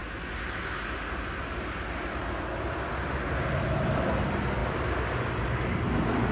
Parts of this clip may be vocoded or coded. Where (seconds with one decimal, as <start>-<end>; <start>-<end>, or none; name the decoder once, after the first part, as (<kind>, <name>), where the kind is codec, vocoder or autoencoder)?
none